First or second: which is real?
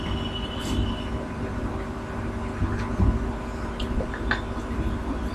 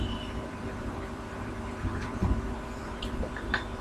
first